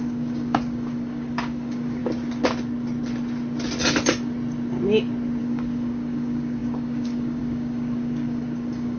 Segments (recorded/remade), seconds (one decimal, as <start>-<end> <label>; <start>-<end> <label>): 0.0-2.0 remade; 2.0-5.4 recorded; 5.4-9.0 remade